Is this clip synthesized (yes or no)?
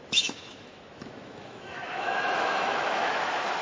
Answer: yes